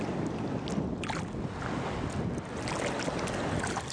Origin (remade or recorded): recorded